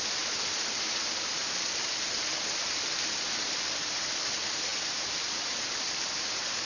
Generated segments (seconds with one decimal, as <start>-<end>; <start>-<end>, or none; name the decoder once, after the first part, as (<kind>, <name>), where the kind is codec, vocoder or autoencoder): none